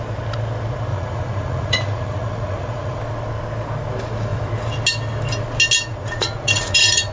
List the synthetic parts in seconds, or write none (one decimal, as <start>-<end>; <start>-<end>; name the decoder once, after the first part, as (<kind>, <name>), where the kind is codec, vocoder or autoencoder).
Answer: 0.9-3.0 (vocoder, Vocos); 5.9-7.1